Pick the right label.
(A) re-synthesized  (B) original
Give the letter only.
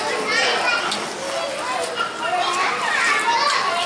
B